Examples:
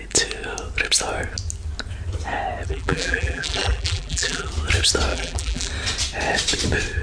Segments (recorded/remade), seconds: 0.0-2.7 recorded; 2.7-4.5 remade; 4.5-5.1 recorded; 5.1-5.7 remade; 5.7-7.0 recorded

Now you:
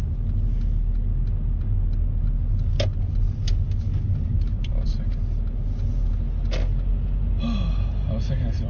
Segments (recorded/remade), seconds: 0.0-4.5 recorded; 4.5-5.0 remade; 5.0-8.7 recorded

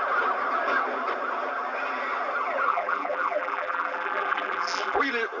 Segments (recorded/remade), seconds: 0.0-2.7 recorded; 2.7-5.0 remade; 5.0-5.4 recorded

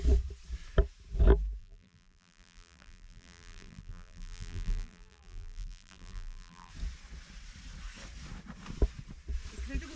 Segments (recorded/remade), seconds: 0.0-1.6 recorded; 1.6-6.7 remade; 6.7-10.0 recorded

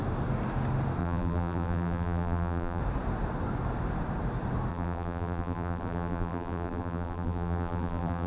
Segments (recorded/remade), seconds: 0.0-1.0 recorded; 1.0-2.8 remade; 2.8-4.7 recorded; 4.7-8.3 remade

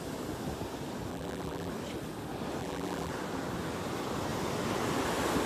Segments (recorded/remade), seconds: 0.0-1.1 recorded; 1.1-1.7 remade; 1.7-2.6 recorded; 2.6-3.1 remade; 3.1-5.5 recorded

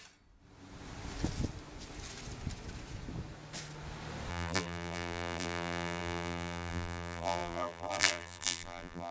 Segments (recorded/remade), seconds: 0.0-4.3 recorded; 4.3-9.1 remade

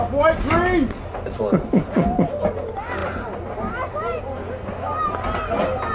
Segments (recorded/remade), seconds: 0.0-5.9 recorded